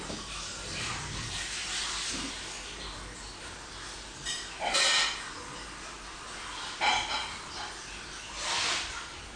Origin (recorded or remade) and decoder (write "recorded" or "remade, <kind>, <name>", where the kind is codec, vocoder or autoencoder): recorded